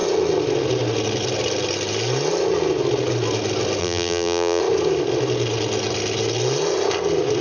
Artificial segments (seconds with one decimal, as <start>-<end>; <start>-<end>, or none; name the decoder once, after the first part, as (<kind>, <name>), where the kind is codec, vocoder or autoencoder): 3.8-4.6 (vocoder, BigVGAN v2)